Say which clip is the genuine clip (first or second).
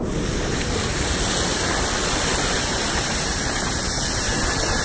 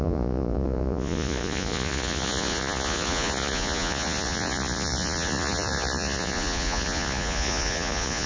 first